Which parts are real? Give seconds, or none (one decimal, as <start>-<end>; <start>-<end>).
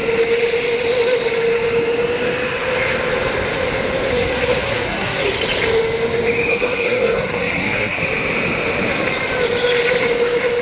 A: 0.0-4.1; 5.2-6.5; 8.0-10.6